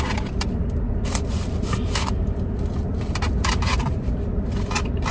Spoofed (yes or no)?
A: no